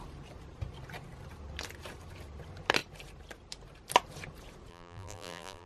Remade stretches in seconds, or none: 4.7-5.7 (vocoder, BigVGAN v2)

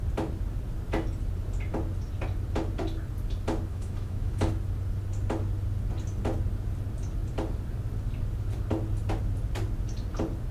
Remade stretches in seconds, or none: 3.7-4.5 (autoencoder, DAC-VAE)

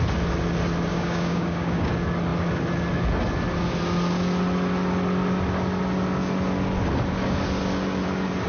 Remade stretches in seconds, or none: 0.9-1.9 (codec, DAC)